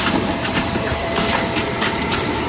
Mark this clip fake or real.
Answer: fake